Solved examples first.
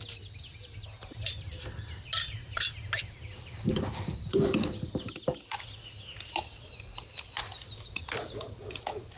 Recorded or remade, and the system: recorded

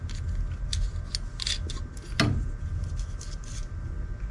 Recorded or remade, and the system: recorded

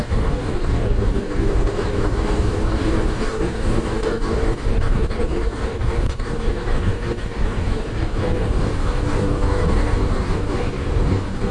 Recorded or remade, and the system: remade, codec, DAC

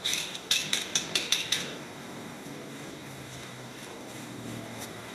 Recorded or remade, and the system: remade, codec, DAC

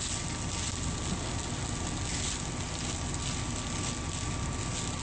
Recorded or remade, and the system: recorded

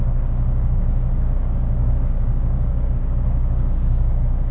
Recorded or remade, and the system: remade, codec, DAC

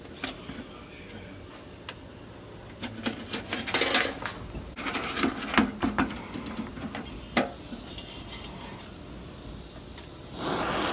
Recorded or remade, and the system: recorded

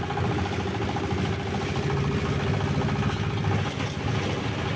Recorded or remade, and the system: recorded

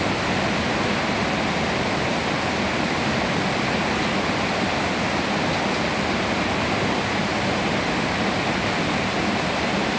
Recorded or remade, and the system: recorded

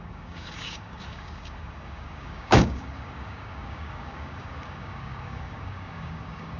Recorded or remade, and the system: remade, codec, DAC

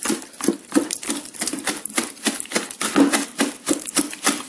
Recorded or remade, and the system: recorded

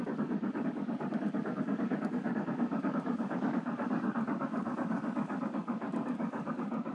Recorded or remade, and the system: remade, codec, DAC